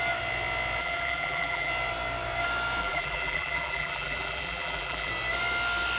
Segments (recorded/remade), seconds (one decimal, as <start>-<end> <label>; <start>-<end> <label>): 0.0-0.8 recorded; 0.8-1.7 remade; 1.7-2.8 recorded; 2.8-5.1 remade; 5.1-6.0 recorded